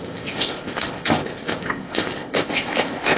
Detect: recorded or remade remade